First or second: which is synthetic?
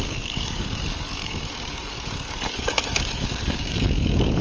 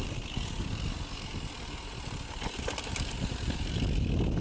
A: first